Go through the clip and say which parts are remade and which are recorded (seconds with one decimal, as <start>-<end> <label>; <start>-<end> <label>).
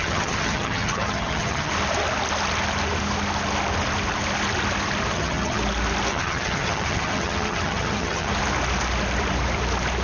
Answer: 0.0-1.7 remade; 1.7-5.1 recorded; 5.1-5.6 remade; 5.6-6.1 recorded; 6.1-8.3 remade; 8.3-10.0 recorded